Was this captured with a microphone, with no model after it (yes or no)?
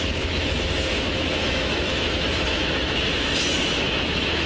no